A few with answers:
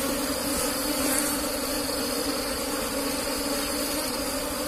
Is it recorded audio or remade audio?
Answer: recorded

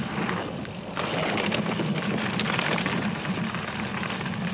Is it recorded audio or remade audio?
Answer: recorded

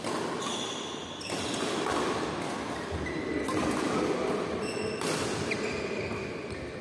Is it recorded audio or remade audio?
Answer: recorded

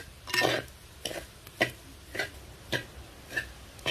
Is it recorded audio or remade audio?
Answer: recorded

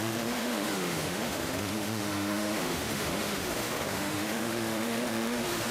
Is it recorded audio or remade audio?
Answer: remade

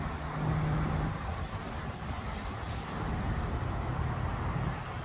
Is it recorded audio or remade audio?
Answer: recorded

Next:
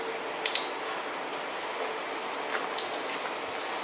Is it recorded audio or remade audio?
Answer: recorded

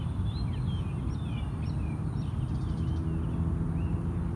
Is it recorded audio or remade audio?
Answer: recorded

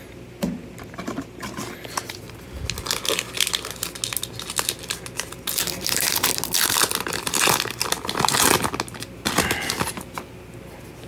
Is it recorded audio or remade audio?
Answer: recorded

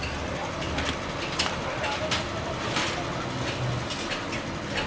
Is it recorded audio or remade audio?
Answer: recorded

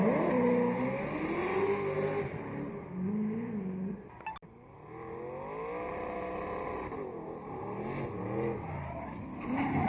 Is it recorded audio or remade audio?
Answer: recorded